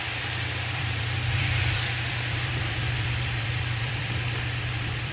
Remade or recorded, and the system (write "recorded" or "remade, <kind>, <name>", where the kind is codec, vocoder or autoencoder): remade, vocoder, BigVGAN v2